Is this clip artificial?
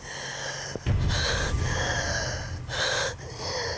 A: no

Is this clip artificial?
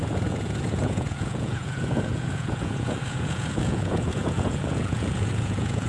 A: yes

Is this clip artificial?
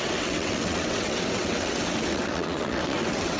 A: yes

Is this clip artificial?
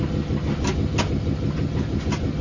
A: no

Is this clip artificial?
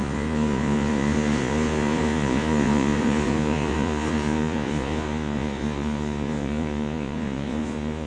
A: yes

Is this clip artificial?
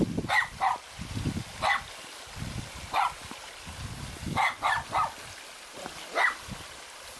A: no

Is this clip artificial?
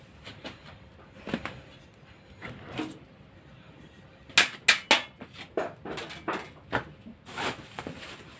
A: no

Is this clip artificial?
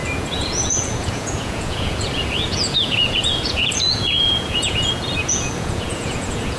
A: yes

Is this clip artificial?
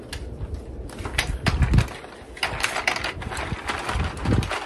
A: no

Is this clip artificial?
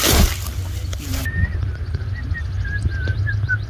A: no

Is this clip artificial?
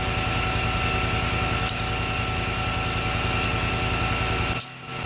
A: no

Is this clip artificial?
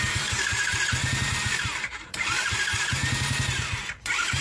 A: yes